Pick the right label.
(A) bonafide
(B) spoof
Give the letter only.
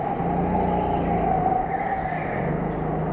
A